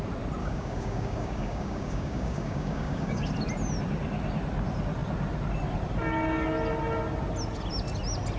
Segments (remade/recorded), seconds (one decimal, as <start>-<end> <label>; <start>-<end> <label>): 0.0-0.4 recorded; 0.4-3.3 remade; 3.3-8.4 recorded